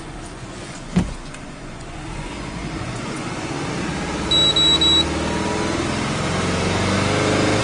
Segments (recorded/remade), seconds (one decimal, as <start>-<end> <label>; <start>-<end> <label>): 0.0-3.9 remade; 3.9-7.6 recorded